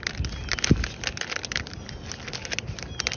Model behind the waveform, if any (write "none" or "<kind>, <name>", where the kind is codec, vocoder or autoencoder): none